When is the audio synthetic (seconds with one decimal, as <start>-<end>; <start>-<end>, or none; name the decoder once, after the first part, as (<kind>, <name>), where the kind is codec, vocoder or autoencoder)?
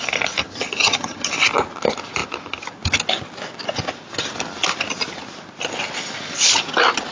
0.4-1.3 (vocoder, HiFi-GAN)